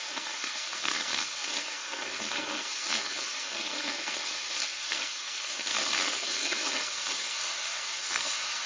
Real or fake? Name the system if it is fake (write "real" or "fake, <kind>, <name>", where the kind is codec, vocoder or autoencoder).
fake, codec, SNAC